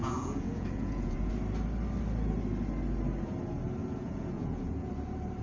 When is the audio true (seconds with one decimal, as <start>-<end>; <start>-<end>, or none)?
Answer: 1.3-3.8; 4.9-5.4